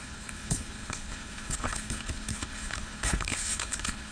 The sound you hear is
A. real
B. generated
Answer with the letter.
B